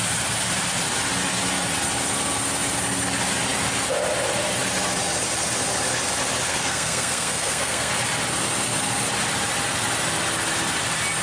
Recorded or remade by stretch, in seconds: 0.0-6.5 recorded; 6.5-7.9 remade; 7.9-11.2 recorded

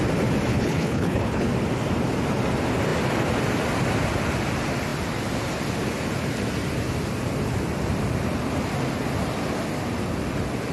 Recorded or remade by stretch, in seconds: 0.0-0.5 recorded; 0.5-1.5 remade; 1.5-10.7 recorded

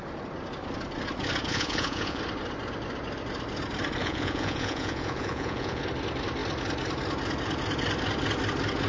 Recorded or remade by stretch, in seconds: 0.0-1.5 recorded; 1.5-2.2 remade; 2.2-4.0 recorded; 4.0-5.8 remade; 5.8-8.9 recorded

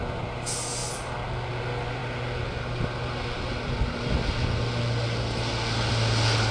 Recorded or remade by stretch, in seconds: 0.0-6.5 recorded

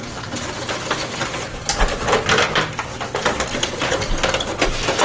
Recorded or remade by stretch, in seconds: 0.0-5.0 recorded

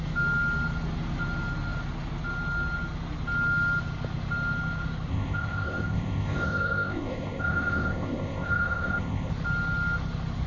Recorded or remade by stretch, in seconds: 0.0-5.1 recorded; 5.1-9.3 remade; 9.3-10.5 recorded

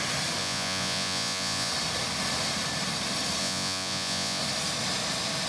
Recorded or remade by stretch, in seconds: 0.0-0.4 recorded; 0.4-1.7 remade; 1.7-3.4 recorded; 3.4-4.4 remade; 4.4-5.5 recorded

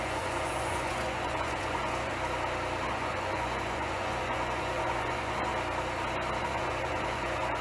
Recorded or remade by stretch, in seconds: 0.0-2.1 remade; 2.1-2.9 recorded; 2.9-5.5 remade; 5.5-6.4 recorded; 6.4-7.6 remade